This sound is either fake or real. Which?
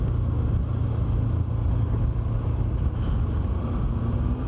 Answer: real